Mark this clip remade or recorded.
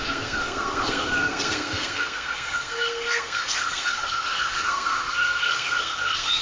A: remade